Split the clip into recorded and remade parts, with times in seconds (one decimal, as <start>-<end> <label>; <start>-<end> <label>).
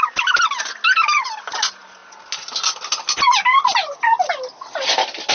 0.0-5.3 recorded